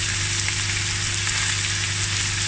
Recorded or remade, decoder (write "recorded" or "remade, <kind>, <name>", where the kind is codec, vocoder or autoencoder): recorded